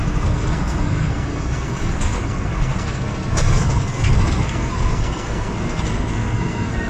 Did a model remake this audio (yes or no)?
yes